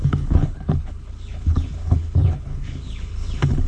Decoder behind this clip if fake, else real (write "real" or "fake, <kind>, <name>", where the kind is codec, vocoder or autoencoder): fake, codec, HILCodec